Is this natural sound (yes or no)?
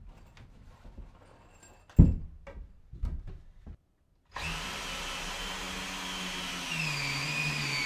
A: yes